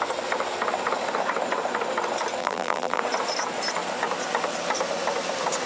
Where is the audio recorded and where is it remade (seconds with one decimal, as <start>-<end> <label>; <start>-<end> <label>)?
0.0-2.4 recorded; 2.4-3.0 remade; 3.0-5.7 recorded